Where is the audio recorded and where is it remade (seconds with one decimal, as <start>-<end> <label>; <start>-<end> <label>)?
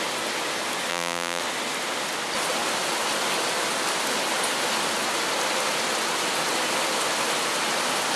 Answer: 0.0-0.9 recorded; 0.9-1.4 remade; 1.4-8.2 recorded